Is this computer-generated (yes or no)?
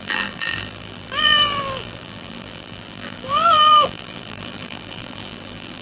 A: yes